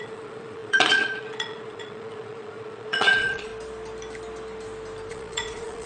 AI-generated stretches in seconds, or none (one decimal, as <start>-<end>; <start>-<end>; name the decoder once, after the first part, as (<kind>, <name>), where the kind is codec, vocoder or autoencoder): 0.0-3.5 (vocoder, Vocos); 5.1-5.9